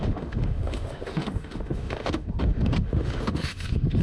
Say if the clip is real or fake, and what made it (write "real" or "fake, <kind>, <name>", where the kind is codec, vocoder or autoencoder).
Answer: fake, autoencoder, DAC-VAE